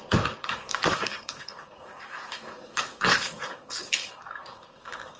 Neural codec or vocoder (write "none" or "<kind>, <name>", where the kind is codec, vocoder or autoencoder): codec, DAC